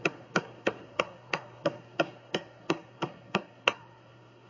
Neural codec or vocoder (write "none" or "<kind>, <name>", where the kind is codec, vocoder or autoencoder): codec, SNAC